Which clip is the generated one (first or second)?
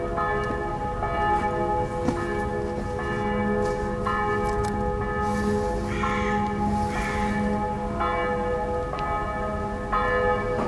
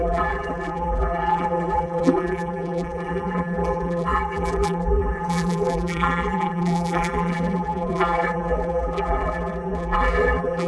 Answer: second